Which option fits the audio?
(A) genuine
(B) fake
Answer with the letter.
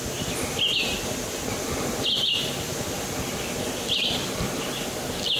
A